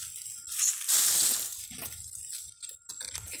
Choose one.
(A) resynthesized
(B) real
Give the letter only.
B